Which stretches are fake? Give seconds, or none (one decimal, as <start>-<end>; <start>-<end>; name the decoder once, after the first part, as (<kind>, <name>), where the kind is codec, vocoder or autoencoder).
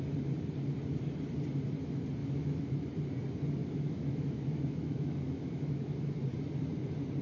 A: 2.2-2.7 (autoencoder, DAC-VAE); 3.6-6.1